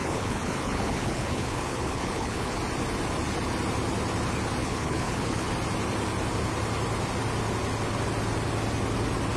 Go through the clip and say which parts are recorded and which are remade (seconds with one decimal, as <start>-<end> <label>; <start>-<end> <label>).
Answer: 0.0-2.5 remade; 2.5-4.6 recorded; 4.6-5.5 remade; 5.5-9.4 recorded